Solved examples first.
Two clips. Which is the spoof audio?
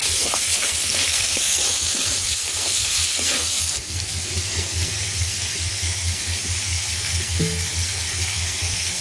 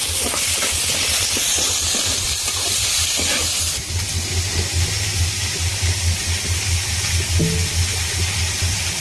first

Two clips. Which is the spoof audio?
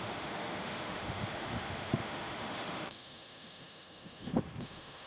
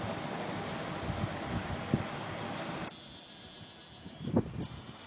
first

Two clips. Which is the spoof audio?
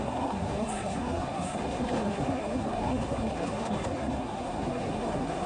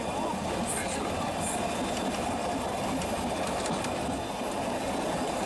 first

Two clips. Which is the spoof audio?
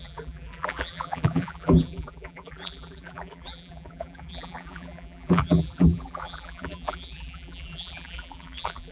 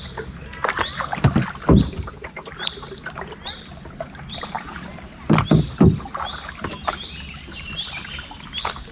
first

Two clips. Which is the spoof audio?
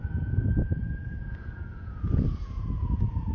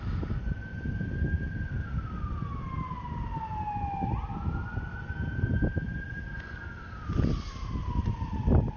first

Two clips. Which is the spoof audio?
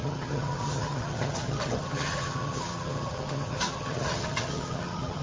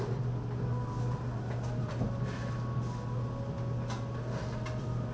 first